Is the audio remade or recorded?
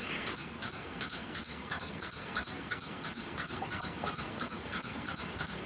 remade